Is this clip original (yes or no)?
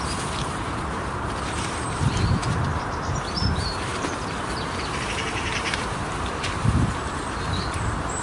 no